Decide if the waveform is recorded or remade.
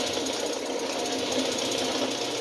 recorded